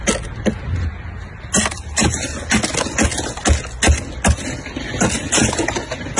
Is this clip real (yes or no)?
yes